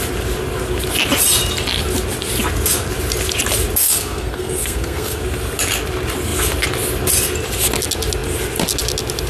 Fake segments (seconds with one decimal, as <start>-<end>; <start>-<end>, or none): 3.8-5.2